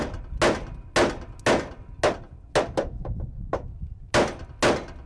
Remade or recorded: recorded